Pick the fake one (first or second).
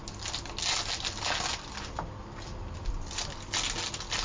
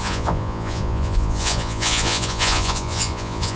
second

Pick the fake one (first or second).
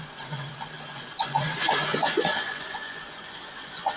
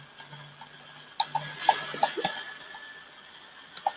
first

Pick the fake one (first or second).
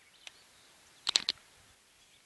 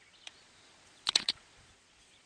second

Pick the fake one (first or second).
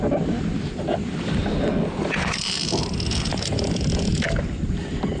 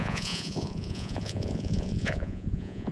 second